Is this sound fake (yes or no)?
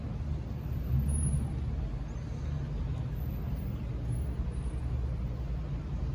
no